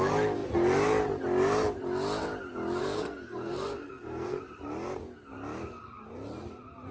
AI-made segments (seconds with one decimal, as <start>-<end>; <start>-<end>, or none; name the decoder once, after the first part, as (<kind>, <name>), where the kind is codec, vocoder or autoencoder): 2.8-4.4 (codec, SNAC)